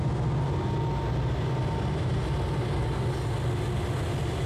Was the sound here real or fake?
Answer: real